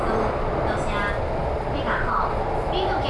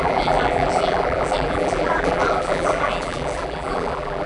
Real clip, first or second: first